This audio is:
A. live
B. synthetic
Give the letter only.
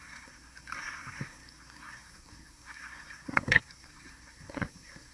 B